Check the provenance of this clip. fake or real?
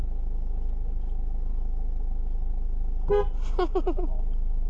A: real